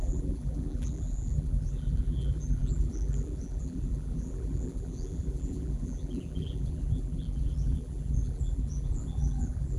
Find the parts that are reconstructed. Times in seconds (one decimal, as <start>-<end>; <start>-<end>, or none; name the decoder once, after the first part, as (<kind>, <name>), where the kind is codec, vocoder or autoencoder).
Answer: 0.0-9.8 (vocoder, BigVGAN v2)